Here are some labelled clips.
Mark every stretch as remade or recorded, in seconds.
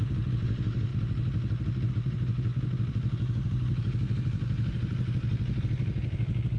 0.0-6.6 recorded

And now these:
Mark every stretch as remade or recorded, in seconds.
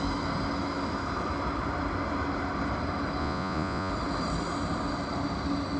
0.0-3.2 recorded; 3.2-3.9 remade; 3.9-5.8 recorded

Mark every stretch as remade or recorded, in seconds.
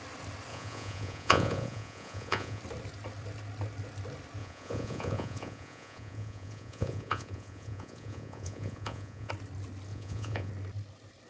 0.0-0.5 recorded; 0.5-2.6 remade; 2.6-4.4 recorded; 4.4-9.3 remade; 9.3-9.9 recorded; 9.9-10.5 remade; 10.5-11.3 recorded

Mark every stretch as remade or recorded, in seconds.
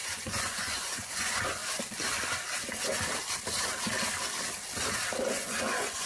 0.0-1.6 remade; 1.6-5.3 recorded; 5.3-6.1 remade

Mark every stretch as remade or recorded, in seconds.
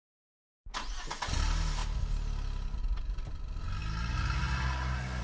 0.0-5.2 recorded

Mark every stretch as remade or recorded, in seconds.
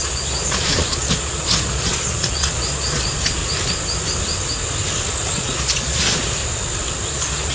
0.0-3.4 remade; 3.4-5.4 recorded; 5.4-6.4 remade; 6.4-7.1 recorded; 7.1-7.5 remade